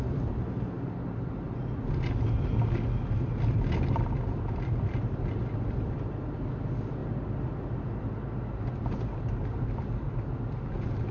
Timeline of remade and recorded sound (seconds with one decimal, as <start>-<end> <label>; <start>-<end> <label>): 0.0-11.1 recorded